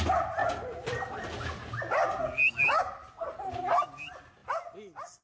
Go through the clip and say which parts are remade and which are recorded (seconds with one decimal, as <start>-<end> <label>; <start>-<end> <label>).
0.0-5.2 recorded